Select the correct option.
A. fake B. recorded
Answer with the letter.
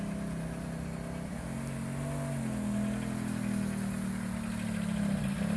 B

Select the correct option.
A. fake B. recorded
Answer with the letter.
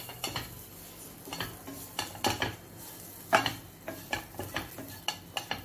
B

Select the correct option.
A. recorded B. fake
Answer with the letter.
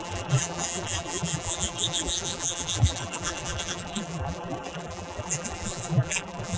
B